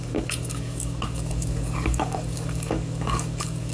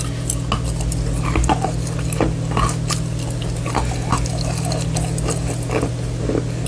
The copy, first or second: first